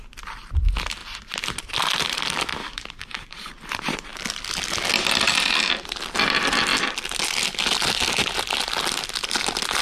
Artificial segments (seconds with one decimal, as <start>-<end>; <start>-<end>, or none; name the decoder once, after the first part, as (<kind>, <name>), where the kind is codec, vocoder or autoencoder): 2.6-3.5 (codec, DAC)

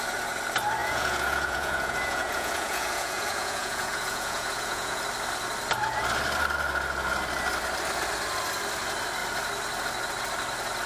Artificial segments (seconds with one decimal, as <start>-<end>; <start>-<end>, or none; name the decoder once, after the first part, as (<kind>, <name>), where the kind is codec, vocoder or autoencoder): 0.8-5.0 (vocoder, Vocos)

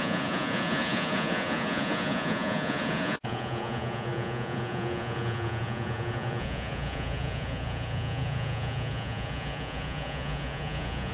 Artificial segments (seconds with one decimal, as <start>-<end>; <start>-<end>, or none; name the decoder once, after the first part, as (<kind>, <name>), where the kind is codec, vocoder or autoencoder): 0.0-11.1 (vocoder, Vocos)

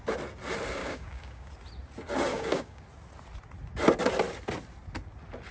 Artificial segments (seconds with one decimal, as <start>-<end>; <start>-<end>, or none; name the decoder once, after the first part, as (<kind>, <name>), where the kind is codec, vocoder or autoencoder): 0.8-1.5 (codec, DAC); 2.3-2.8

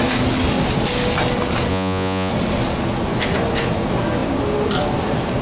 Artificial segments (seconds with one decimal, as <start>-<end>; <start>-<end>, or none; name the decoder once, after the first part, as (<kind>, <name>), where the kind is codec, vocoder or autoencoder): 1.7-2.3 (vocoder, Vocos)

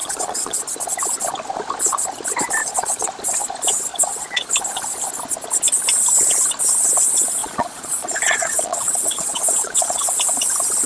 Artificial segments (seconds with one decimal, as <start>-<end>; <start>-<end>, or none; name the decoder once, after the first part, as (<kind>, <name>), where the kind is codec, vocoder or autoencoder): 0.0-0.6 (vocoder, Vocos); 2.6-3.1; 3.9-4.5; 7.4-10.2